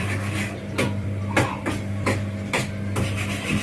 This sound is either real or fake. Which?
fake